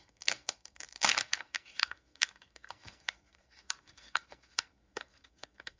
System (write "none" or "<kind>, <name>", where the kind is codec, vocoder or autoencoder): codec, SNAC